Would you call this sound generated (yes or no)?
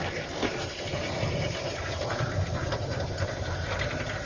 no